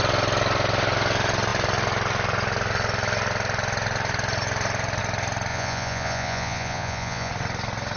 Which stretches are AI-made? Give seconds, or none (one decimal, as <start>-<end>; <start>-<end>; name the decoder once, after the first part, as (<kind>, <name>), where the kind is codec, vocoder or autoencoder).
5.5-7.3 (vocoder, Vocos)